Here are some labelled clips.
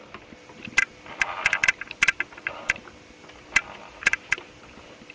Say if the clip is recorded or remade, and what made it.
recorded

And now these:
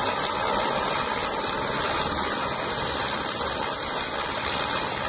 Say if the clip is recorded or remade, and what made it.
recorded